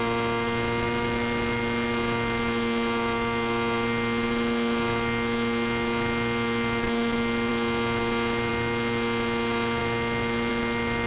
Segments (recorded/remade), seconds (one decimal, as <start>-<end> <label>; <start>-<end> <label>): 0.0-11.1 recorded